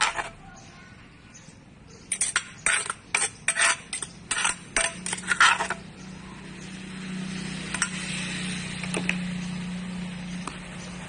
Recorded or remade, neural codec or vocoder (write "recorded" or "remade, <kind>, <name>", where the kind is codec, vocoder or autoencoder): recorded